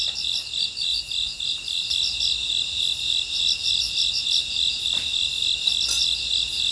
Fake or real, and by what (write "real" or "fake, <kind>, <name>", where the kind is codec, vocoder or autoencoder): real